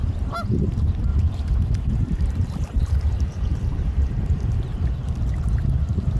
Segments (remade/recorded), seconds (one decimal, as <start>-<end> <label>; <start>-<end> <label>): 0.0-0.6 remade; 0.6-1.1 recorded; 1.1-4.8 remade; 4.8-6.2 recorded